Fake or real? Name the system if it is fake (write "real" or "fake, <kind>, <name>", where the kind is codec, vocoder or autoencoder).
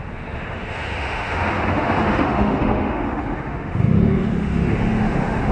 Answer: fake, autoencoder, DAC-VAE